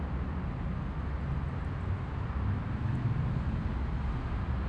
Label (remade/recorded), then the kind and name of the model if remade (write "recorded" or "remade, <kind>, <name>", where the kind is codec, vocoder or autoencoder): recorded